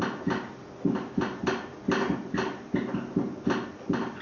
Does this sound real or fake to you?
real